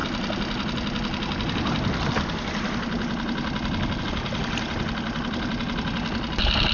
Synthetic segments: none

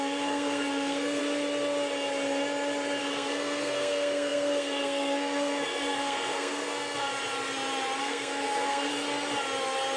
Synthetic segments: 0.0-1.2 (codec, SNAC); 3.0-7.1; 8.0-8.9

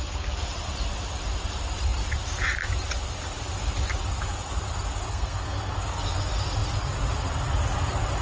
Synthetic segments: 5.1-5.8 (codec, SNAC)

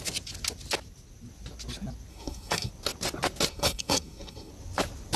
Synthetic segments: 2.1-2.7 (codec, SNAC); 3.5-4.5

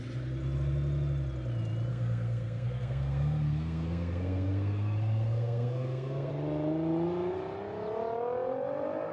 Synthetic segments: 1.9-6.3 (codec, SNAC)

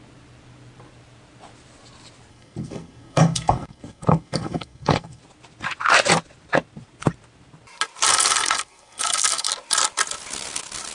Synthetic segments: 2.3-5.2 (codec, SNAC); 8.1-9.5